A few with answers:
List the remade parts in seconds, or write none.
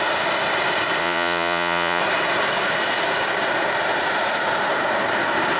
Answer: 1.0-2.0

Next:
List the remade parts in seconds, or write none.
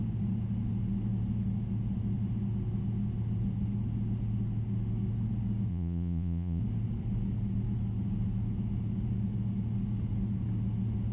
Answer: 5.7-6.6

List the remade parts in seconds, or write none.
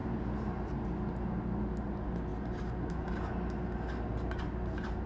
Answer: none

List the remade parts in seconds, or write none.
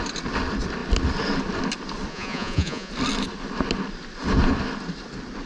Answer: 2.1-2.9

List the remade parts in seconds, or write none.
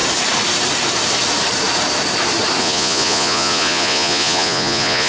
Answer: 2.6-5.1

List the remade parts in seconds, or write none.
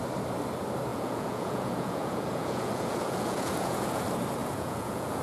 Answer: 0.9-4.0; 4.4-5.2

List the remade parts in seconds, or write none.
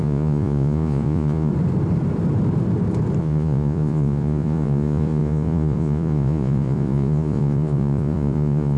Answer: 0.0-1.5; 3.2-8.8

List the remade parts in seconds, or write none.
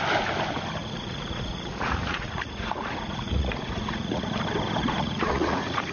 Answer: 0.8-4.3; 4.8-5.9